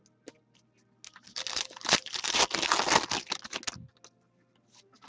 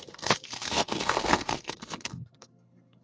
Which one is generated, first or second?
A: second